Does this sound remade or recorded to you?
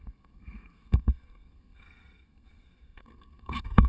remade